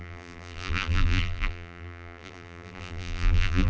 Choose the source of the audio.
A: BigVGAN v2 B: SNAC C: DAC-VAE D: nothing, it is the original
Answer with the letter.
A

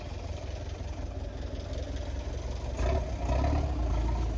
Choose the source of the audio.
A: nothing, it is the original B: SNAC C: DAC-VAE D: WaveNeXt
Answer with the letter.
A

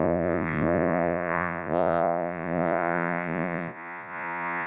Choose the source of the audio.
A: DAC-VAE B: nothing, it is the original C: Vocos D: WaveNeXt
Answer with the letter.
C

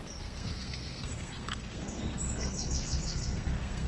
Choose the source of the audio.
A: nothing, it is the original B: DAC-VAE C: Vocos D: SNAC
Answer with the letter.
D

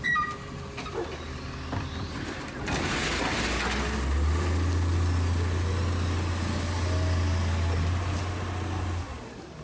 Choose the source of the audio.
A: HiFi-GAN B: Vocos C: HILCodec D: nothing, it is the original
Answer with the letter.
D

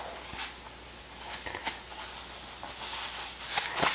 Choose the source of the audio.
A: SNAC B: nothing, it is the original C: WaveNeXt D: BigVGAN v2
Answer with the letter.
B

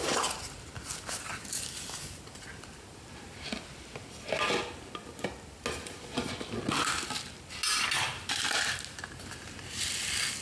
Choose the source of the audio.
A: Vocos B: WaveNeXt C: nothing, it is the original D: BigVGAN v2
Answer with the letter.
C